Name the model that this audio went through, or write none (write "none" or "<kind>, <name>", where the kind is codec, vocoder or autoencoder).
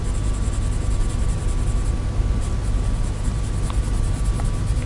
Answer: none